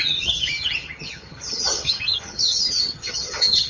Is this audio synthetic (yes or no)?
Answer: yes